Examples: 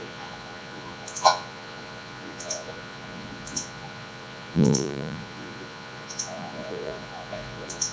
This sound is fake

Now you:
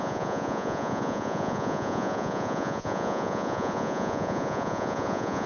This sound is fake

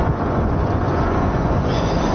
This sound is fake